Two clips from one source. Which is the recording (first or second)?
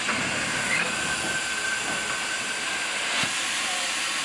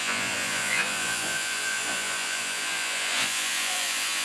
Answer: first